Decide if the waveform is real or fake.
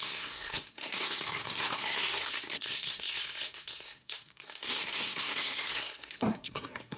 fake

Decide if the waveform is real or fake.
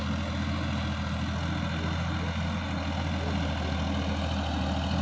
real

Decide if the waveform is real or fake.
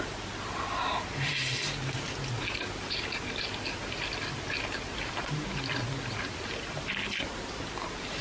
real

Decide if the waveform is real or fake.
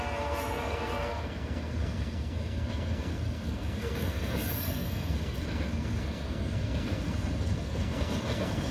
fake